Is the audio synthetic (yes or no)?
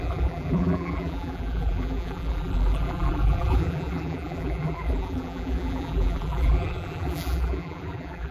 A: yes